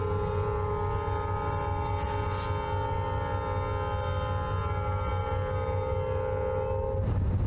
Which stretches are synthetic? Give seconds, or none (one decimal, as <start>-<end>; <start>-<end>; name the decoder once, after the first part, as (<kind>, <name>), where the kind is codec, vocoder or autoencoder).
none